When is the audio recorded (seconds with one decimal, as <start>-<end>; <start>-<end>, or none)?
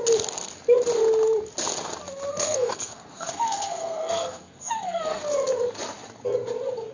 0.0-2.3; 5.2-6.9